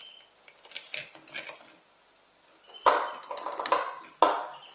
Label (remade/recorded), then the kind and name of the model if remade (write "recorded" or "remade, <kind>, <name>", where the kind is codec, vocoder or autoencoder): recorded